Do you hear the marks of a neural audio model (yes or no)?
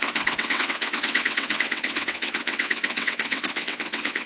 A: yes